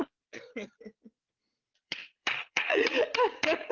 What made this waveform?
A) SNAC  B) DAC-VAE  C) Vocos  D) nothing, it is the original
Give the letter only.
C